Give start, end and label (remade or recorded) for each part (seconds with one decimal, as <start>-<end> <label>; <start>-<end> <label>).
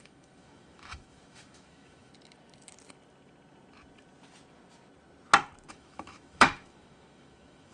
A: 0.0-2.1 remade; 2.1-5.7 recorded; 5.7-7.7 remade